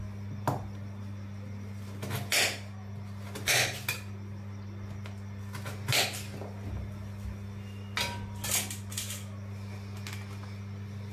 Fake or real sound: real